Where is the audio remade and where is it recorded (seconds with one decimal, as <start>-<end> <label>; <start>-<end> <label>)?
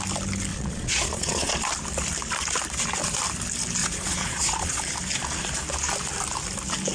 0.0-0.5 recorded; 0.5-1.5 remade; 1.5-3.8 recorded; 3.8-4.8 remade; 4.8-6.9 recorded